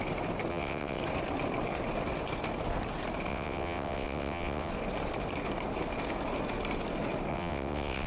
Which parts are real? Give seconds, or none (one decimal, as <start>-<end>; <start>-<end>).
0.0-0.5; 1.0-3.3; 4.7-7.3